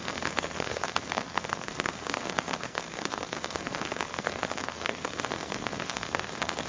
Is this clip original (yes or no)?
no